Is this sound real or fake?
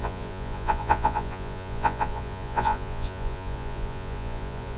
fake